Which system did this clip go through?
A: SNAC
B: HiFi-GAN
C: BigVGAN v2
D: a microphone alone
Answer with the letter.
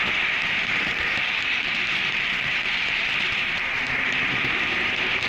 C